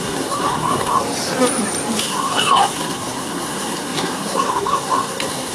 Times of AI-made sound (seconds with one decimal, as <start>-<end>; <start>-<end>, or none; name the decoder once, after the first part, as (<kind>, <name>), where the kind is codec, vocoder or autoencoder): 0.0-1.0 (codec, SNAC); 2.0-5.5